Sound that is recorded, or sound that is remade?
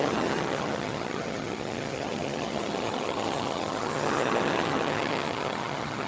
remade